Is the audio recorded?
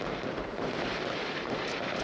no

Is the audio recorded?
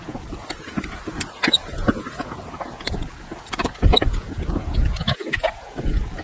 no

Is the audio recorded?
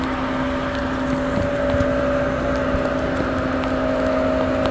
yes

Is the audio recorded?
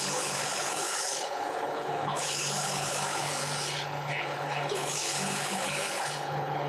no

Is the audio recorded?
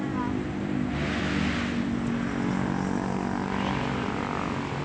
yes